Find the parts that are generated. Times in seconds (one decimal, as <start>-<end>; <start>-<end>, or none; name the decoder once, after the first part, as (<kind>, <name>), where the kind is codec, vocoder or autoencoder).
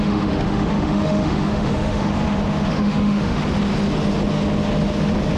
0.0-2.1 (autoencoder, DAC-VAE); 2.7-3.4